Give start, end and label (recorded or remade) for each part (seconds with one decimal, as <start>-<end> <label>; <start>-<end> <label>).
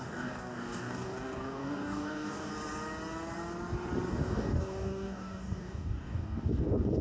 0.0-2.5 remade; 2.5-4.1 recorded; 4.1-7.0 remade